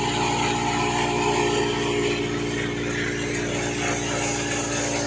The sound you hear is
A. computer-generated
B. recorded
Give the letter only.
B